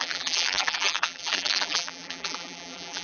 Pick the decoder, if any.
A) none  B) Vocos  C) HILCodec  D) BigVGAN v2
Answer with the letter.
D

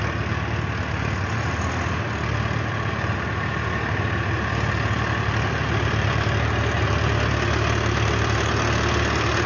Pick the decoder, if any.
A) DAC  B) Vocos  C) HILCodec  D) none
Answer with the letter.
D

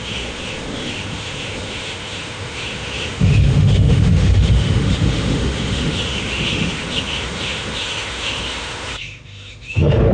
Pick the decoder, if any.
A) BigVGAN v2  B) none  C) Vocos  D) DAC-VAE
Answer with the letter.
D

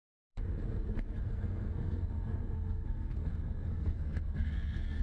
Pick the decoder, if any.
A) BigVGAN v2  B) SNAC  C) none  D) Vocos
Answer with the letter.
B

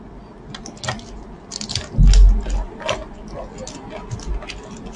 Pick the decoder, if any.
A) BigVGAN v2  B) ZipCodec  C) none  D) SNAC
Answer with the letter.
C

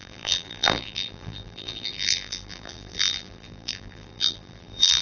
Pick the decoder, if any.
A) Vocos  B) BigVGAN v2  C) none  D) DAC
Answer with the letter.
B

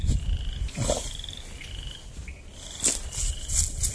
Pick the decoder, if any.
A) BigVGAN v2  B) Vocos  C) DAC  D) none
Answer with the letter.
D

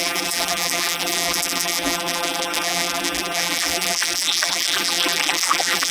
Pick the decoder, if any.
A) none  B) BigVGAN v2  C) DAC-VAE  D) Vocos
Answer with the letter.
B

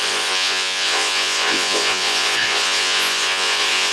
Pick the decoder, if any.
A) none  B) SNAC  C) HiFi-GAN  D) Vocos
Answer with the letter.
D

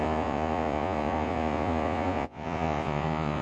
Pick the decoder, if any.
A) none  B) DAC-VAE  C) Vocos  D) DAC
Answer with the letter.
C